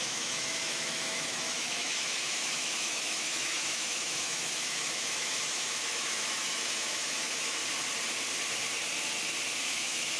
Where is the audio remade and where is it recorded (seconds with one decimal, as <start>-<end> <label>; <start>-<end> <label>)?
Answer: 0.0-7.6 remade; 7.6-9.6 recorded; 9.6-10.2 remade